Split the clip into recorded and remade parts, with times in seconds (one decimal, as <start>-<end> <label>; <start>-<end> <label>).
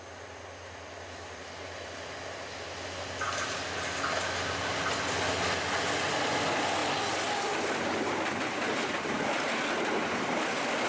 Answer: 0.0-10.9 recorded